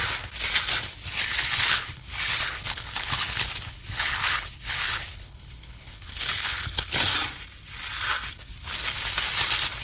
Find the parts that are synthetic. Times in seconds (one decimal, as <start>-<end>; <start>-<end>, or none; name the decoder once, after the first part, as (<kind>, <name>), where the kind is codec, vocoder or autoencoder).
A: 1.2-7.1 (codec, HILCodec)